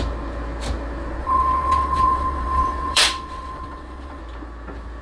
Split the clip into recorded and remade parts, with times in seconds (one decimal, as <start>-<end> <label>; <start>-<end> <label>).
0.0-1.2 recorded; 1.2-4.2 remade; 4.2-5.0 recorded